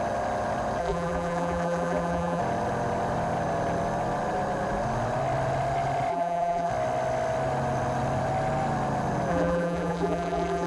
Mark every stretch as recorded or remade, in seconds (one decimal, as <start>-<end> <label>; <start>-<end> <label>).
0.0-0.8 recorded; 0.8-2.4 remade; 2.4-6.1 recorded; 6.1-6.7 remade; 6.7-9.3 recorded; 9.3-10.7 remade